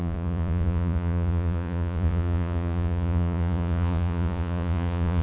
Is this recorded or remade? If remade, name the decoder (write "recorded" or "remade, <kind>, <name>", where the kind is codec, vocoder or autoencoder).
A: remade, vocoder, Vocos